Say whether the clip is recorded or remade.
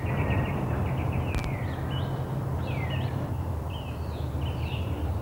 recorded